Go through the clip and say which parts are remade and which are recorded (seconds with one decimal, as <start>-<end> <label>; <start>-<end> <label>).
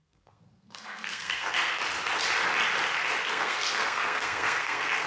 0.0-1.8 remade; 1.8-3.3 recorded; 3.3-5.1 remade